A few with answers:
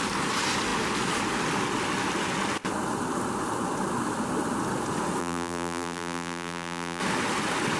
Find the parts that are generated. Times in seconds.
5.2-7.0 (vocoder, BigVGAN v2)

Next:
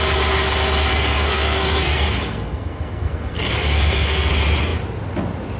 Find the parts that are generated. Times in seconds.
0.9-4.3 (codec, SNAC)

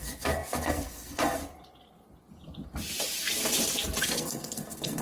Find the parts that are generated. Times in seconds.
0.0-1.4 (codec, SNAC); 4.0-5.0

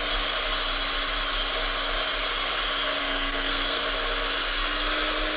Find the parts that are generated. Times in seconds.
3.0-3.8 (codec, SNAC)

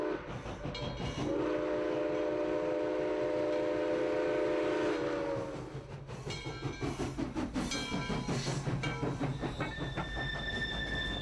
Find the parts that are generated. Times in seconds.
9.3-9.9 (vocoder, BigVGAN v2)

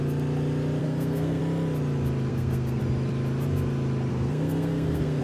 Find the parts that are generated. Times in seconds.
0.8-1.4 (codec, SNAC); 2.3-2.8; 4.1-5.2

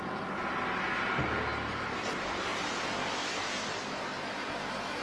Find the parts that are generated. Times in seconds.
none